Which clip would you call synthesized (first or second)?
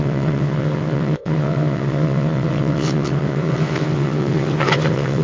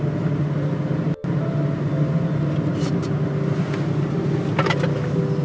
first